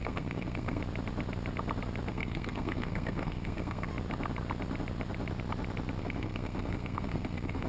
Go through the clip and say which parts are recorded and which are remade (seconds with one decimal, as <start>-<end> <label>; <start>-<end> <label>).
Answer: 0.0-0.8 remade; 0.8-2.1 recorded; 2.1-3.9 remade; 3.9-6.0 recorded; 6.0-7.7 remade